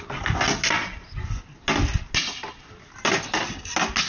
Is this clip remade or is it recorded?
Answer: recorded